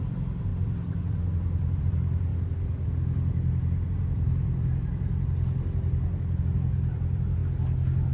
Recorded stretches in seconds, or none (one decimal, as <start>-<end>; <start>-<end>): 0.5-1.8; 2.3-6.4; 7.4-8.1